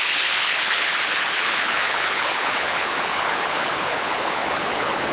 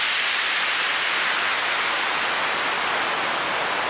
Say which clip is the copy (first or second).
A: first